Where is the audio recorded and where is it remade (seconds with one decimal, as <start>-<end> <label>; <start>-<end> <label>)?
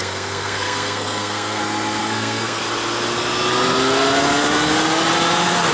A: 0.0-1.6 remade; 1.6-2.0 recorded; 2.0-2.6 remade; 2.6-5.7 recorded